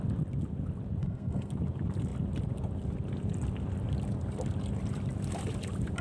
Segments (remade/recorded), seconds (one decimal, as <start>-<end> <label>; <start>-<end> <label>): 0.0-1.0 recorded; 1.0-1.5 remade; 1.5-6.0 recorded